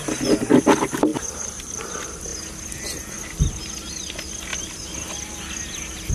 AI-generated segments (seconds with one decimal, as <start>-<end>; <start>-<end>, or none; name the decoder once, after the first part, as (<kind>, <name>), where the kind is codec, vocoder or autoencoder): 1.1-1.9 (vocoder, BigVGAN v2)